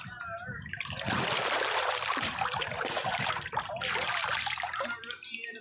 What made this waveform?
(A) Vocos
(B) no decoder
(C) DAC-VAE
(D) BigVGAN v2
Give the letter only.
D